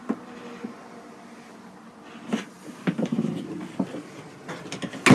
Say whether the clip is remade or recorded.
recorded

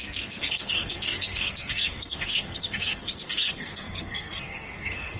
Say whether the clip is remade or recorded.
remade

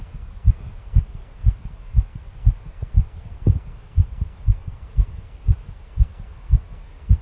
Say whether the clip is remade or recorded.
remade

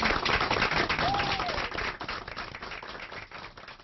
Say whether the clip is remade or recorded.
recorded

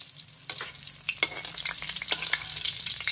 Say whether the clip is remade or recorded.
recorded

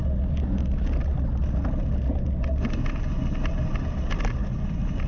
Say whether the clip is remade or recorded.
recorded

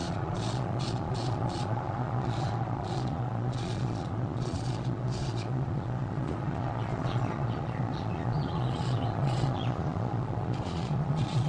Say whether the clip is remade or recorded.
remade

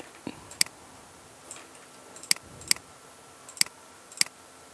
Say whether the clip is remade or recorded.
recorded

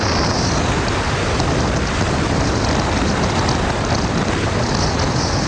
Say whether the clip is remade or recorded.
recorded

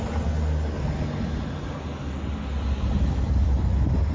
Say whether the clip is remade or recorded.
recorded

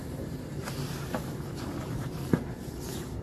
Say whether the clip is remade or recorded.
remade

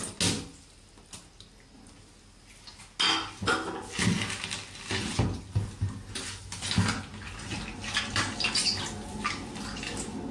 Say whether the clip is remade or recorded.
recorded